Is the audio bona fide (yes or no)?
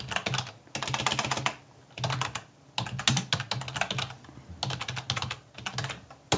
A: yes